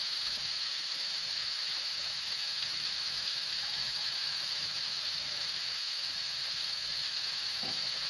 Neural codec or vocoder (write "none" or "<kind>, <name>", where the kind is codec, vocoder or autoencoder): autoencoder, DAC-VAE